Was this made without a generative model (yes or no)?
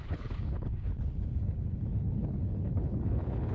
no